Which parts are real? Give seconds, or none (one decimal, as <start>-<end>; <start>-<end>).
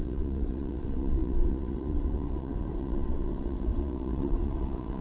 none